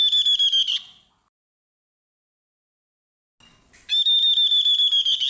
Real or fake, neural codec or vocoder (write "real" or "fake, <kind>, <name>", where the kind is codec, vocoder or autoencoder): real